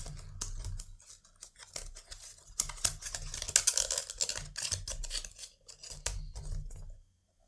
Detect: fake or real real